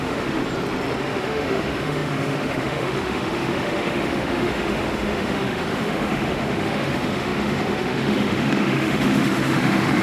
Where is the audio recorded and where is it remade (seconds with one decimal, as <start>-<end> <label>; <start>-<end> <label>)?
0.0-0.4 remade; 0.4-1.0 recorded; 1.0-10.0 remade